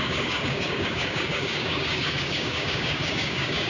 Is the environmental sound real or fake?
fake